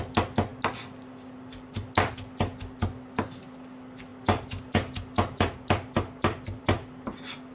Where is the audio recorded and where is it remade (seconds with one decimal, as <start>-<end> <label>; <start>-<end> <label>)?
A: 0.0-7.5 recorded

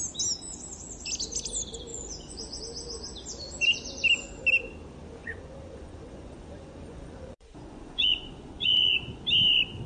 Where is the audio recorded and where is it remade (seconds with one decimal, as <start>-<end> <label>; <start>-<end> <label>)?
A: 0.0-1.9 recorded; 1.9-2.6 remade; 2.6-5.2 recorded; 5.2-9.2 remade; 9.2-9.9 recorded

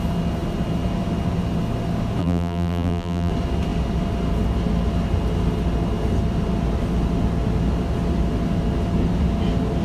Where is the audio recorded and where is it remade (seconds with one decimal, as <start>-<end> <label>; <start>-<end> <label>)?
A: 0.0-2.2 recorded; 2.2-3.3 remade; 3.3-9.8 recorded

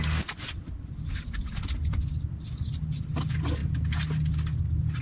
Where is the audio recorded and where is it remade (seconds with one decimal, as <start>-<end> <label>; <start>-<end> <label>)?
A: 0.0-5.0 recorded

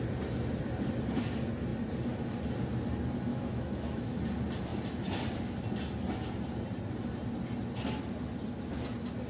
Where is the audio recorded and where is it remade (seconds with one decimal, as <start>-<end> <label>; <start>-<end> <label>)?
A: 0.0-3.3 recorded; 3.3-4.2 remade; 4.2-9.3 recorded